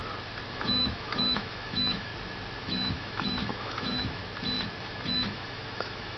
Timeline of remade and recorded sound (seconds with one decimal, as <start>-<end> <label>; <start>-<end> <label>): 0.0-0.5 recorded; 0.5-2.1 remade; 2.1-2.6 recorded; 2.6-4.2 remade; 4.2-4.8 recorded; 4.8-6.2 remade